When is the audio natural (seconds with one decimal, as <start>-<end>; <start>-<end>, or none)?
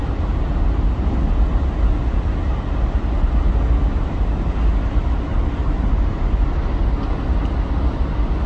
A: 0.0-8.5